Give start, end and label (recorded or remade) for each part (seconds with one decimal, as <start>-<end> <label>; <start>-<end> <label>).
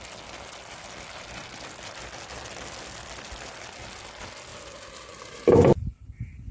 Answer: 0.0-6.5 recorded